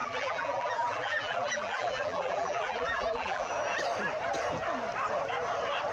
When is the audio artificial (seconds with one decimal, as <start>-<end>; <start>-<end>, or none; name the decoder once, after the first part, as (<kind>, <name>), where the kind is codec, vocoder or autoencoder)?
0.0-3.5 (vocoder, BigVGAN v2)

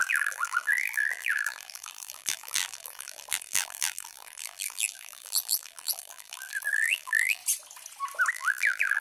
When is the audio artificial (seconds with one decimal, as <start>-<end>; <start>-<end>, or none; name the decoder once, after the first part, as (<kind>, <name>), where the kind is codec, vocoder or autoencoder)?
0.0-7.4 (vocoder, BigVGAN v2); 8.3-9.0

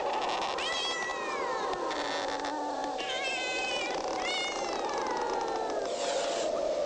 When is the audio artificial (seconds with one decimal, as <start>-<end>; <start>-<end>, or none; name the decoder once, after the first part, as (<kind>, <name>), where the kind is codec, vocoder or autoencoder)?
none

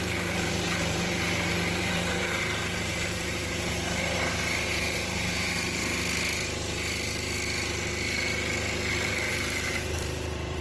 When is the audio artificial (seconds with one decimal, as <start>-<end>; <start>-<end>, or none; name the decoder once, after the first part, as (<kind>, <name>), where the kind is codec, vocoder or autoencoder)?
0.0-5.8 (vocoder, BigVGAN v2); 9.3-10.6

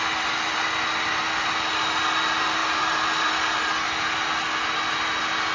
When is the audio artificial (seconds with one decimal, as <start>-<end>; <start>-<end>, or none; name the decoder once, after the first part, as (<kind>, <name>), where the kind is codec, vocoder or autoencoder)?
2.6-3.3 (vocoder, BigVGAN v2)